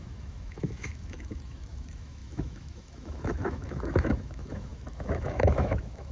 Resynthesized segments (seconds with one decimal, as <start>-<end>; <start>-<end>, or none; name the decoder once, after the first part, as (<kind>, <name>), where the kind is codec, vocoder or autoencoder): 0.0-6.1 (autoencoder, DAC-VAE)